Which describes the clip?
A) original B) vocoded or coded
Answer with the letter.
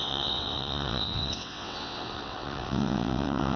B